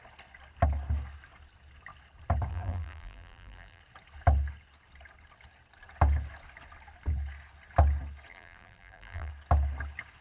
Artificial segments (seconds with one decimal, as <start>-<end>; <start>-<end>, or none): 2.5-3.8; 8.3-9.3